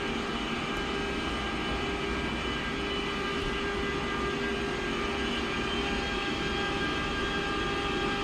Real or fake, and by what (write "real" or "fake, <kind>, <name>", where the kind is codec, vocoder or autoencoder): real